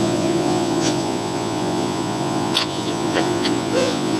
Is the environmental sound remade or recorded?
remade